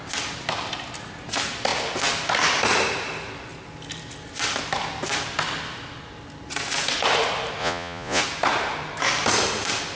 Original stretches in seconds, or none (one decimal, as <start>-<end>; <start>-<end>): 0.0-7.6; 8.2-10.0